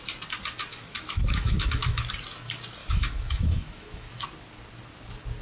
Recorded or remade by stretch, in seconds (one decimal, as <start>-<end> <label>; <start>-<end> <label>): 0.0-0.7 recorded; 0.7-2.1 remade; 2.1-2.8 recorded; 2.8-4.1 remade; 4.1-5.4 recorded